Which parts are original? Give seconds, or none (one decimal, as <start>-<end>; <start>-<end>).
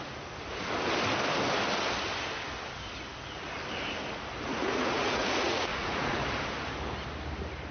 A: 0.0-4.5; 6.2-7.7